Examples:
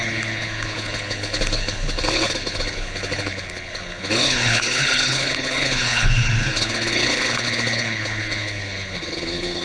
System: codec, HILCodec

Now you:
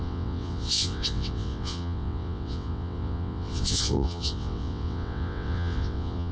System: vocoder, WaveNeXt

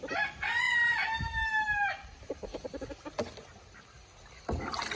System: none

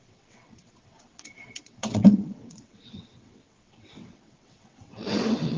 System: vocoder, WaveNeXt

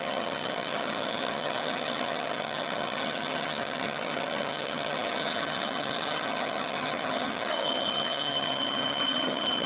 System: vocoder, HiFi-GAN